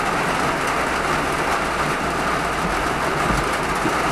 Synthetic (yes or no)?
no